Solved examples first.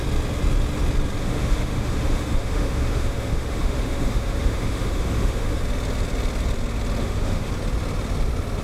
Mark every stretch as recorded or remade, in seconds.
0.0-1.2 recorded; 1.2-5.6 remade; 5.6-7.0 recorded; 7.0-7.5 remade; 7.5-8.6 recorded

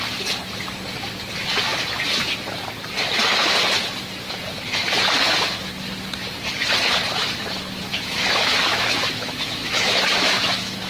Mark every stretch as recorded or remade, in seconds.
0.0-7.9 recorded; 7.9-10.9 remade